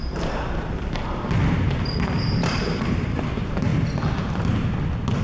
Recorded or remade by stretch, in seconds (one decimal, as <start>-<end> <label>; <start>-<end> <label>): 0.0-1.4 remade; 1.4-2.4 recorded; 2.4-3.7 remade; 3.7-5.2 recorded